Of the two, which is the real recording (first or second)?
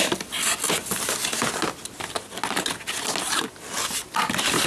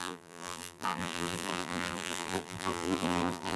first